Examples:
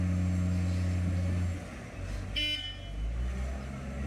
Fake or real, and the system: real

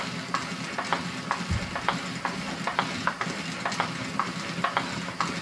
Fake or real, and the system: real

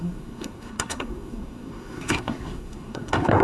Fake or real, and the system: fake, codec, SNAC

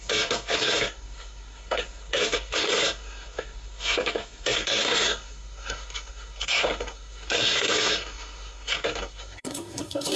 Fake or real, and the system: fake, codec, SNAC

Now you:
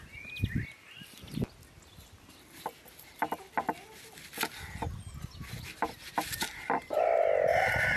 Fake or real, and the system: real